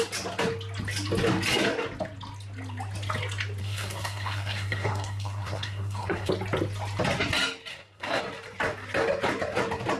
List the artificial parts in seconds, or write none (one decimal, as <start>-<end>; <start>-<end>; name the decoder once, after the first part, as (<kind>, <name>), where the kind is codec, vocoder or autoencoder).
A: 3.6-6.3 (codec, SNAC); 7.7-8.2